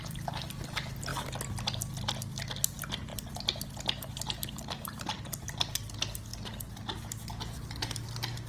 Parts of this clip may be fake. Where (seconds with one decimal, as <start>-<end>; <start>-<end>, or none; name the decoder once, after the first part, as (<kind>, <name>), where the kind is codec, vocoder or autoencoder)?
none